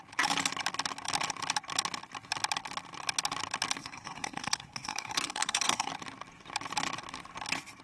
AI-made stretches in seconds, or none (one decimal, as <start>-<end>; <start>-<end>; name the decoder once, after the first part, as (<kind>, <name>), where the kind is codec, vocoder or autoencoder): 3.8-5.9 (codec, SNAC)